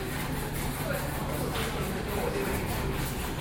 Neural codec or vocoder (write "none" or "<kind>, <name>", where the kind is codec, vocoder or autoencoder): none